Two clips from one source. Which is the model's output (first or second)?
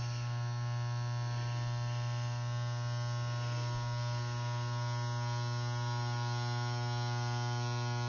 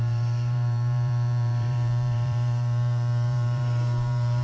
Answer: second